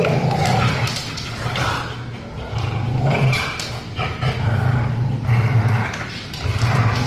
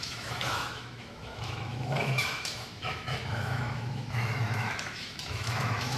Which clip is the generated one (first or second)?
second